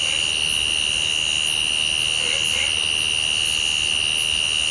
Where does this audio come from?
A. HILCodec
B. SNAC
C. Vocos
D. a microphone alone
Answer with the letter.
D